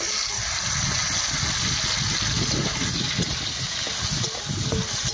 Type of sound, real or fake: real